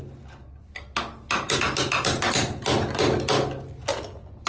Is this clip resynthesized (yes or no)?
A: no